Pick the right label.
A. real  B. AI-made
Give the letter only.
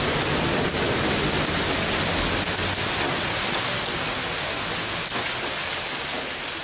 A